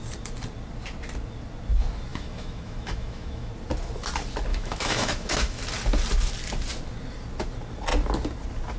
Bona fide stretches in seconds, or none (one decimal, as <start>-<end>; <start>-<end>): 0.0-2.1; 3.5-4.5; 5.6-8.8